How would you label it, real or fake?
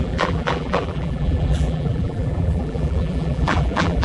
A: fake